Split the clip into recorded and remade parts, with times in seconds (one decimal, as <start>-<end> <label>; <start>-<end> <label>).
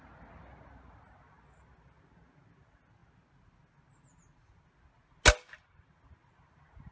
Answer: 0.0-6.9 recorded